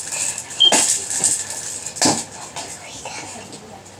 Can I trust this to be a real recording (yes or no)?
yes